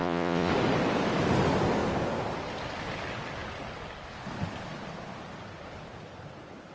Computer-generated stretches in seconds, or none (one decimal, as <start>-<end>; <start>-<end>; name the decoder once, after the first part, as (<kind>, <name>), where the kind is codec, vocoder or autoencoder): 0.0-0.5 (vocoder, Vocos)